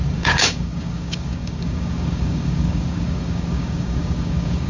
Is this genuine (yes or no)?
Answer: no